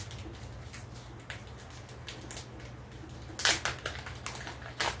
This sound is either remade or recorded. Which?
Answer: recorded